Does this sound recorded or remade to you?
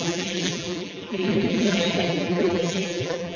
remade